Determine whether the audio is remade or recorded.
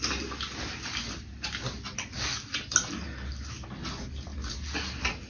recorded